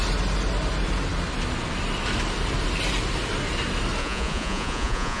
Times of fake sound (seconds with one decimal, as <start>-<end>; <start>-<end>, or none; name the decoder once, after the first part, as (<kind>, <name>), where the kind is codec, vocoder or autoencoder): 4.0-5.2 (vocoder, Vocos)